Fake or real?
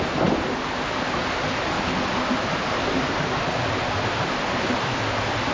real